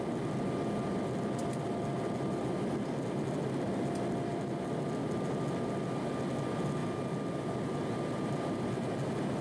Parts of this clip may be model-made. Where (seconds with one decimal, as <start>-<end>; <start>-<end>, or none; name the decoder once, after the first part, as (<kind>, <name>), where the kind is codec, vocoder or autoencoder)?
none